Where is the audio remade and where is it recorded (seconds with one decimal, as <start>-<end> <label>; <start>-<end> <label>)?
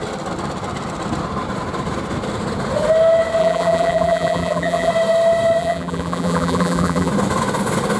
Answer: 0.0-3.4 recorded; 3.4-4.9 remade; 4.9-5.6 recorded; 5.6-7.1 remade; 7.1-8.0 recorded